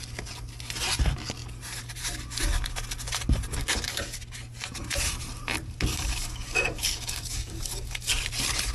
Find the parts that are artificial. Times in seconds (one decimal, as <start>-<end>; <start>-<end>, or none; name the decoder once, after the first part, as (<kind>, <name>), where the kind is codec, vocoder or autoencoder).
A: 3.6-4.2 (codec, DAC); 5.9-8.1

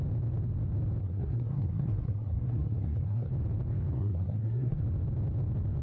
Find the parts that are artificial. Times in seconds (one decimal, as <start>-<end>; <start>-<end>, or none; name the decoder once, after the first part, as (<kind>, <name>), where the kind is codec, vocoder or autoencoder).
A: 1.0-3.3 (codec, SNAC); 3.9-4.8

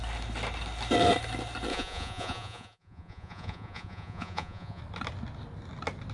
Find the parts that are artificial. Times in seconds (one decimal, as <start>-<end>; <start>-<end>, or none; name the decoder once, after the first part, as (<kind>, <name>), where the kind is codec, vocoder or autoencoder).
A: 1.7-4.8 (vocoder, Vocos)

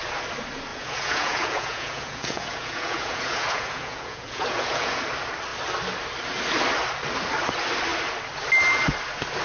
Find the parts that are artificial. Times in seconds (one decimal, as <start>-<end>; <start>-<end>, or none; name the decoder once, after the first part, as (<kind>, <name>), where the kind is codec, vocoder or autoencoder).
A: 0.7-5.0 (vocoder, Vocos)

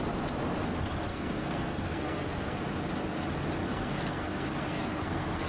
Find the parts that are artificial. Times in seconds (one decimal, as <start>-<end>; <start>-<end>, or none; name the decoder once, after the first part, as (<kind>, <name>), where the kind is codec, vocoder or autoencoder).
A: 1.1-2.6 (codec, SNAC); 3.6-5.5